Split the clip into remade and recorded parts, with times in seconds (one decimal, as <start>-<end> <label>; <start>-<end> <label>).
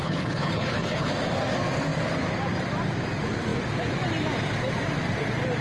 0.0-1.1 remade; 1.1-5.6 recorded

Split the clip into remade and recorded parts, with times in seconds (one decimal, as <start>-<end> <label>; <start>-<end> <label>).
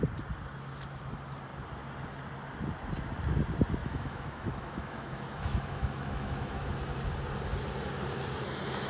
0.0-3.8 recorded; 3.8-6.7 remade; 6.7-8.9 recorded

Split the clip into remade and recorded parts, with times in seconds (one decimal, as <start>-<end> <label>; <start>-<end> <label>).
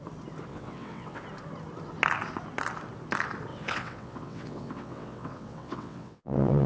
0.0-0.5 recorded; 0.5-1.2 remade; 1.2-3.5 recorded; 3.5-6.7 remade